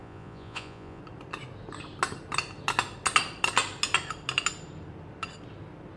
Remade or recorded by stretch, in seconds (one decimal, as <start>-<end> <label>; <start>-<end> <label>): 0.0-1.0 remade; 1.0-6.0 recorded